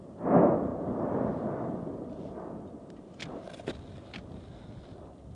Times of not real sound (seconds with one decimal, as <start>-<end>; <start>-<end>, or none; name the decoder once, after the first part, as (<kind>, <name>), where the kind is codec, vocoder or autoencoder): none